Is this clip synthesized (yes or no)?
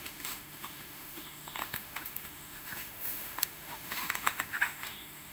yes